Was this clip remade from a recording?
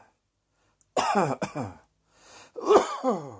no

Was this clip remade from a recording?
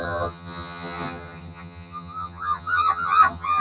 yes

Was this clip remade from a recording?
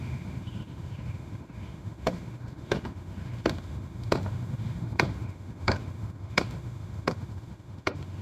yes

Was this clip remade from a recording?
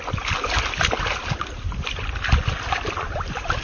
no